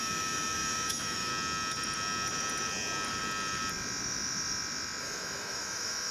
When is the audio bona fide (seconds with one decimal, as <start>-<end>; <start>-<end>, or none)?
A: 1.3-5.0